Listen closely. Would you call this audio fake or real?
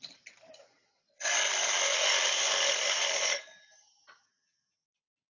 fake